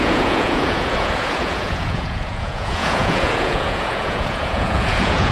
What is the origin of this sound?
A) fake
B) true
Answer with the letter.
A